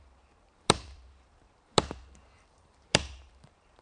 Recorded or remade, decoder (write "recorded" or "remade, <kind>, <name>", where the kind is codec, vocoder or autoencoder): remade, vocoder, BigVGAN v2